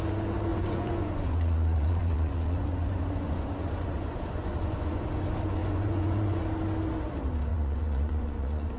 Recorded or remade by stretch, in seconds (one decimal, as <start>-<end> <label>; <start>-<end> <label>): 0.0-0.5 recorded; 0.5-5.0 remade; 5.0-5.6 recorded; 5.6-6.4 remade; 6.4-7.5 recorded; 7.5-8.8 remade